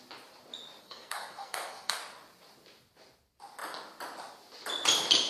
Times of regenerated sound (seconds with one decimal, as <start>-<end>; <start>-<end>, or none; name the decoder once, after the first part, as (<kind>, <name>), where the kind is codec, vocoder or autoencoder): 0.8-2.0 (codec, SNAC)